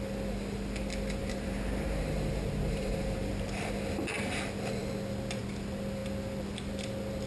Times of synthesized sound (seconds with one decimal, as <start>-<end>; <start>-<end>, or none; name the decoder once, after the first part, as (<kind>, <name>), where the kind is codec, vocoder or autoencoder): 1.2-3.3 (vocoder, BigVGAN v2)